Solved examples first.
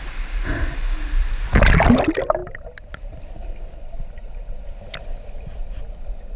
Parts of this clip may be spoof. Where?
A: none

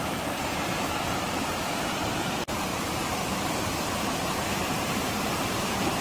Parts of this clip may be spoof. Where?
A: 2.7-6.0 (vocoder, BigVGAN v2)

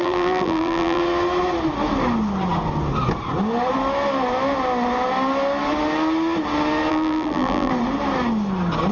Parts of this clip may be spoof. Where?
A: 0.0-1.0 (vocoder, BigVGAN v2); 6.9-7.7

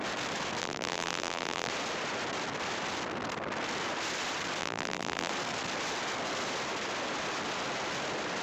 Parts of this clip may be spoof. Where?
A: 0.6-1.7 (vocoder, BigVGAN v2); 4.6-5.3

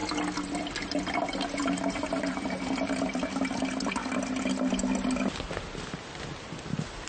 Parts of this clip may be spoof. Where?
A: 1.6-3.2 (vocoder, BigVGAN v2)